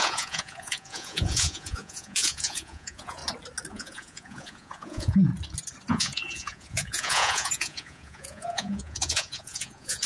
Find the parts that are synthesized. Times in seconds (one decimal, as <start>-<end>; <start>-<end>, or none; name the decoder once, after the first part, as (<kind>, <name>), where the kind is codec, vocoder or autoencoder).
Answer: 0.0-3.2 (vocoder, Vocos); 3.7-5.3; 5.9-10.1